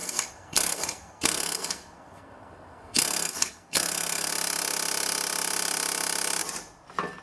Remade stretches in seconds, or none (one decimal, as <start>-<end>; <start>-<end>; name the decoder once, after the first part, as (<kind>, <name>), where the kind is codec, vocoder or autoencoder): 0.0-4.3 (codec, SNAC)